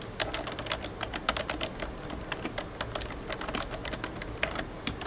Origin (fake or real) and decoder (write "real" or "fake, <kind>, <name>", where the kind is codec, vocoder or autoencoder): real